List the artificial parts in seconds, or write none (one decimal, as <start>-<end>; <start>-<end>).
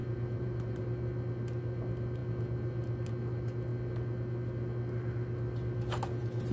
0.0-0.8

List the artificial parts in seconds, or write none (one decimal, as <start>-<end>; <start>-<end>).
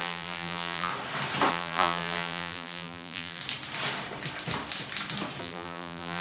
0.0-0.9; 1.5-3.4; 5.4-6.2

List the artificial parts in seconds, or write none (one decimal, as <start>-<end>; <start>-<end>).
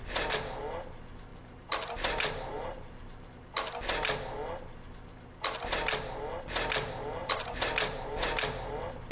1.3-3.3; 7.2-8.2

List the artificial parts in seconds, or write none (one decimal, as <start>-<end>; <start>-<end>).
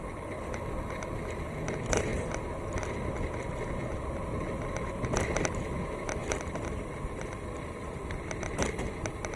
6.2-8.8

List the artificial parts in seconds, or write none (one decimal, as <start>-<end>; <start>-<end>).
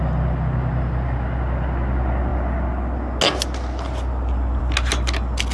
none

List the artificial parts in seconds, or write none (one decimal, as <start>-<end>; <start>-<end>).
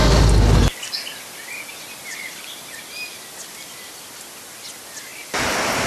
none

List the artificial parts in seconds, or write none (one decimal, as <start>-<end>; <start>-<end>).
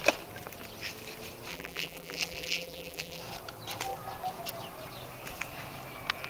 1.5-3.2